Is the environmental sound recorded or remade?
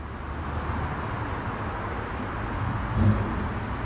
recorded